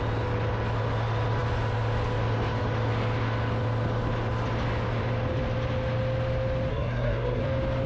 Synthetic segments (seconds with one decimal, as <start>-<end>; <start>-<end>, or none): 6.7-7.4